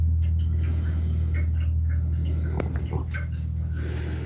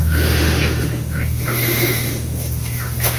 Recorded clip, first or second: first